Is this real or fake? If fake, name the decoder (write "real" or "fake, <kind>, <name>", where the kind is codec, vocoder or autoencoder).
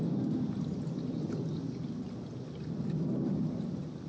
real